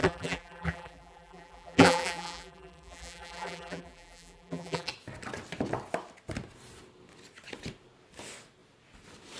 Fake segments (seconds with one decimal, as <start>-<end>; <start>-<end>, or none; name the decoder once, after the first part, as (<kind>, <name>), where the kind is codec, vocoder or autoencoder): 0.0-4.9 (vocoder, BigVGAN v2)